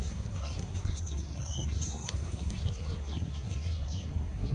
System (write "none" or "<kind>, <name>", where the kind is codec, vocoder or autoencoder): codec, SNAC